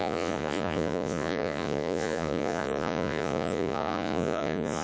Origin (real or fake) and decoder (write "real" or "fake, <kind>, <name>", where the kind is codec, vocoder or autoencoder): fake, vocoder, Vocos